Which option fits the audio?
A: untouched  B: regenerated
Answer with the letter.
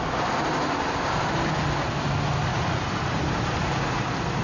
A